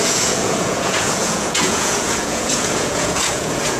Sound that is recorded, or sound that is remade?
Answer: remade